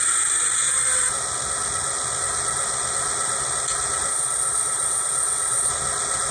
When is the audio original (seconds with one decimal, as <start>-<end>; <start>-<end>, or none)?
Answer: 0.0-4.1; 5.7-6.3